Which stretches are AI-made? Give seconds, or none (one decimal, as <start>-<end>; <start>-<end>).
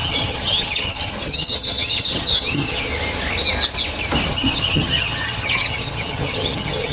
0.0-2.9; 4.3-6.9